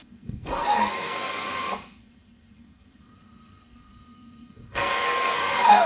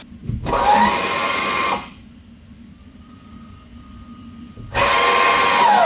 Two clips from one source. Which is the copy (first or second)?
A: first